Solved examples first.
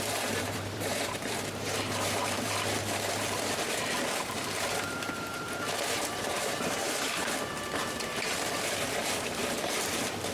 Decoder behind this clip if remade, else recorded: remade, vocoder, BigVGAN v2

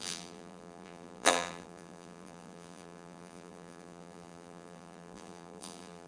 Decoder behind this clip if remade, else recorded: remade, vocoder, BigVGAN v2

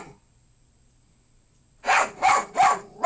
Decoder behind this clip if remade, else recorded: remade, vocoder, BigVGAN v2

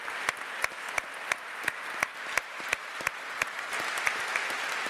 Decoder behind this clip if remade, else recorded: recorded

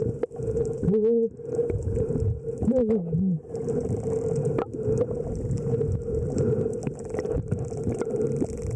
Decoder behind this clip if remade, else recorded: recorded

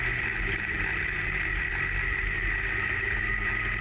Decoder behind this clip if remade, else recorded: remade, vocoder, BigVGAN v2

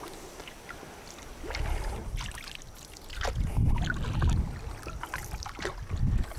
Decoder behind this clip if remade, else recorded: recorded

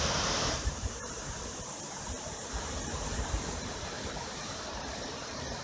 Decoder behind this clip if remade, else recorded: remade, vocoder, BigVGAN v2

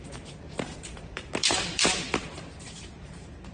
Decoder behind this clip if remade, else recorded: remade, vocoder, BigVGAN v2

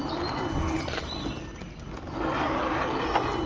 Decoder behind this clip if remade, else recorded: recorded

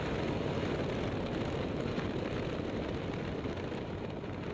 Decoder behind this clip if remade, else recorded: remade, vocoder, BigVGAN v2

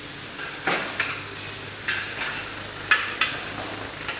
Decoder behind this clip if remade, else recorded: recorded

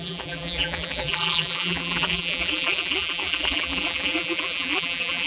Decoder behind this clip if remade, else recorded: remade, vocoder, BigVGAN v2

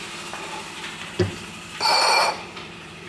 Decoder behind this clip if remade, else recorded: remade, vocoder, BigVGAN v2